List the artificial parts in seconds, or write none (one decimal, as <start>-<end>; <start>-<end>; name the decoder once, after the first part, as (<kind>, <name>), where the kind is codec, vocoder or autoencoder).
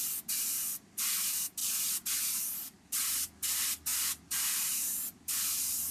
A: 0.0-5.9 (vocoder, BigVGAN v2)